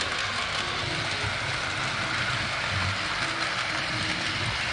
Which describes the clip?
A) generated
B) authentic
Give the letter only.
B